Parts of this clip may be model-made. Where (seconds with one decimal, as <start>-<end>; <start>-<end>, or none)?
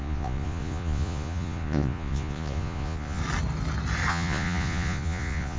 0.0-3.2; 4.1-5.6